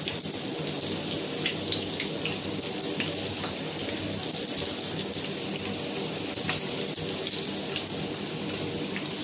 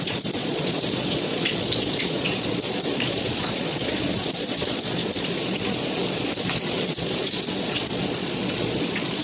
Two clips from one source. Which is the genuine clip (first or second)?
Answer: first